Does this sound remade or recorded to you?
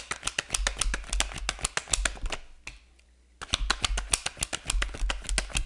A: recorded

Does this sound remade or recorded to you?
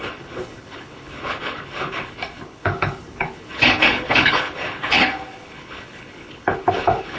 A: remade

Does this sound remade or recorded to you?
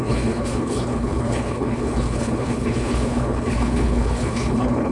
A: remade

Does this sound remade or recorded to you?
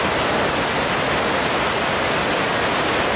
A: recorded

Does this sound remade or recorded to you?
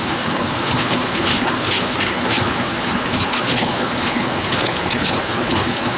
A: remade